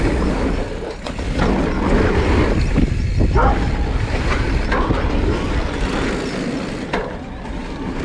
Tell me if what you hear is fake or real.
real